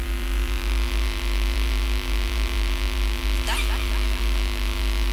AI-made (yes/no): yes